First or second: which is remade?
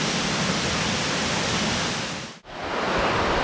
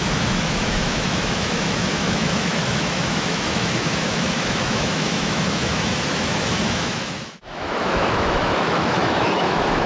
second